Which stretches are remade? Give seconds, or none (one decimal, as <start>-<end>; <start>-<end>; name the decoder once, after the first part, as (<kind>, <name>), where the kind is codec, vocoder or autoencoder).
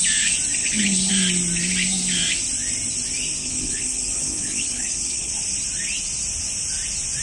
0.6-1.1 (codec, HILCodec); 3.4-5.3